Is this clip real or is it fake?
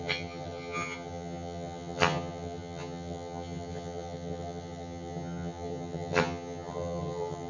fake